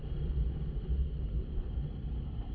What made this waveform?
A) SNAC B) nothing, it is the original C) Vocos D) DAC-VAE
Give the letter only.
B